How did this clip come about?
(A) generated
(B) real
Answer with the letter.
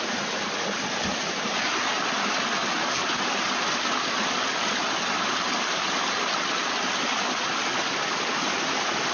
B